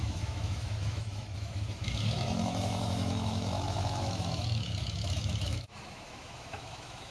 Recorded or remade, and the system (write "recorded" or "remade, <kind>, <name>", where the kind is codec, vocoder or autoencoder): remade, autoencoder, DAC-VAE